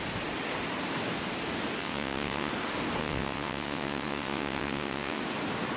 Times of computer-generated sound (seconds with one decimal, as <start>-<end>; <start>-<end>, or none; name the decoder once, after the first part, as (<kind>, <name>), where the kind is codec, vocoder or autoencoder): 1.8-2.5 (vocoder, WaveNeXt); 3.0-5.2

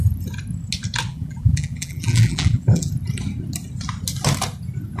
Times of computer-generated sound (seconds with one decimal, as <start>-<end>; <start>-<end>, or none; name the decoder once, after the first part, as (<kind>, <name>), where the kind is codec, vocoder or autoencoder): 1.1-2.9 (vocoder, BigVGAN v2)

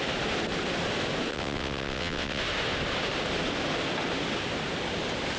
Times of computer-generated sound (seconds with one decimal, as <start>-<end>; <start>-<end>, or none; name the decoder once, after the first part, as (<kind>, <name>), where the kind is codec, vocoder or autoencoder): 1.3-2.4 (vocoder, WaveNeXt)